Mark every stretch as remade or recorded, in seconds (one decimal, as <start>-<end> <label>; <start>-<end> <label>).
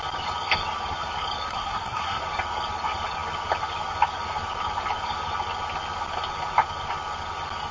0.0-1.5 recorded; 1.5-2.2 remade; 2.2-7.7 recorded